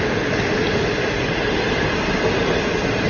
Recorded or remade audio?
recorded